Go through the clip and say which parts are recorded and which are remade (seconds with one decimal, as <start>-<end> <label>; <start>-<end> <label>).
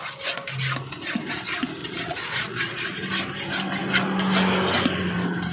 0.0-1.8 recorded; 1.8-3.0 remade; 3.0-5.5 recorded